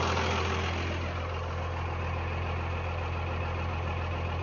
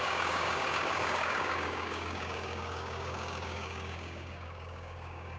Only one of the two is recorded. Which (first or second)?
first